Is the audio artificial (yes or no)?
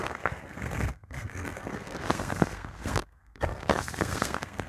yes